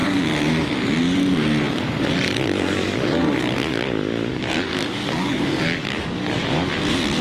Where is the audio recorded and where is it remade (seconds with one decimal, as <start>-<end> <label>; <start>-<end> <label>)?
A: 0.0-4.3 recorded; 4.3-6.4 remade; 6.4-7.2 recorded